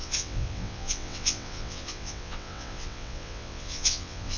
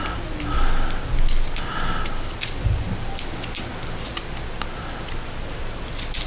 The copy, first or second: first